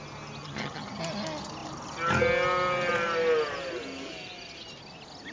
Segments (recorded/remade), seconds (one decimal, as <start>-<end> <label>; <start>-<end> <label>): 0.0-0.4 recorded; 0.4-1.0 remade; 1.0-5.3 recorded